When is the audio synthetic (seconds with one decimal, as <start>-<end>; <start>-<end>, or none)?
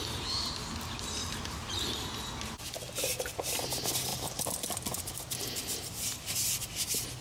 1.2-1.7; 4.1-5.1